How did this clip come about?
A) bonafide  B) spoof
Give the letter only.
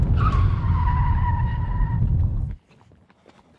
A